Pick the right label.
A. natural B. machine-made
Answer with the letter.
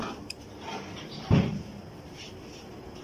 B